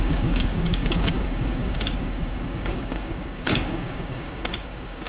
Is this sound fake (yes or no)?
yes